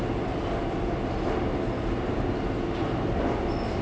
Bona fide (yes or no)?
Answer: yes